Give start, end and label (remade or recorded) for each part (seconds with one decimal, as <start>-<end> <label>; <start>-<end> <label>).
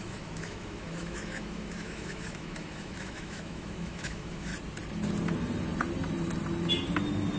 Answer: 0.0-4.5 remade; 4.5-7.4 recorded